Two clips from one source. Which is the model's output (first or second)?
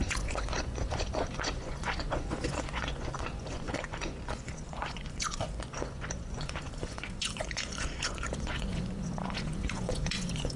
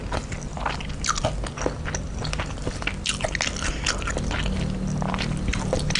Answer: first